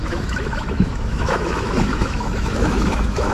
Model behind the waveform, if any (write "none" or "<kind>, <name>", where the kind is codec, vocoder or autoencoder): autoencoder, DAC-VAE